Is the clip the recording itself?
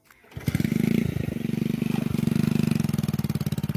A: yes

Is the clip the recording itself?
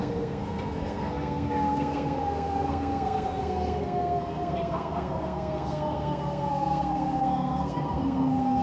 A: no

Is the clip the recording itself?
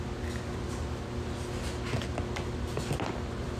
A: yes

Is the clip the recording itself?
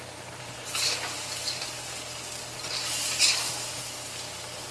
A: yes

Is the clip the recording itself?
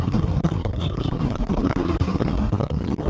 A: no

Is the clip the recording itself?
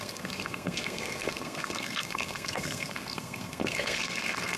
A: no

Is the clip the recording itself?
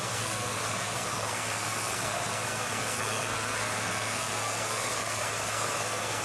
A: no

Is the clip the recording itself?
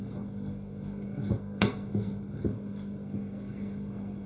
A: no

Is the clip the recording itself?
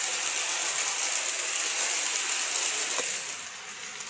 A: yes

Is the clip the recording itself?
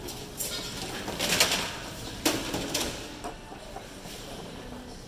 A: yes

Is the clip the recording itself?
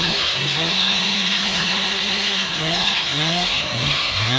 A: no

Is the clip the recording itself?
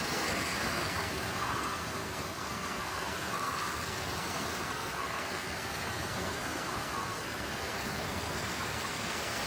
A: no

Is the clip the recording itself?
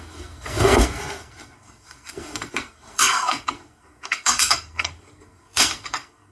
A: no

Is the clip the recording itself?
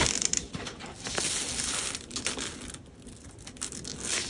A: yes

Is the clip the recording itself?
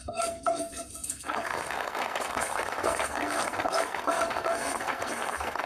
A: no